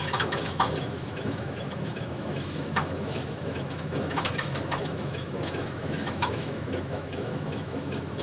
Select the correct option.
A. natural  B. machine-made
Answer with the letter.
B